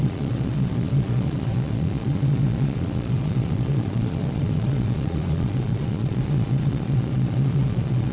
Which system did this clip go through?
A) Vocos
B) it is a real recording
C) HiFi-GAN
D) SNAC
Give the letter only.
A